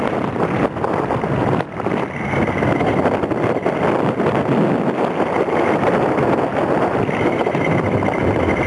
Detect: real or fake real